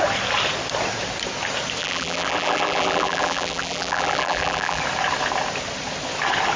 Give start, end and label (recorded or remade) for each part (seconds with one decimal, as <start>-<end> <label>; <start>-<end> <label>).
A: 0.0-1.8 recorded; 1.8-4.8 remade; 4.8-6.6 recorded